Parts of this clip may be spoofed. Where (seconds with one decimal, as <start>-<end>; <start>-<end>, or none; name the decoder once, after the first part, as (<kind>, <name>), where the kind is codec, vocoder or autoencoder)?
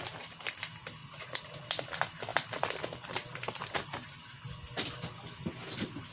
1.0-1.6 (vocoder, Vocos)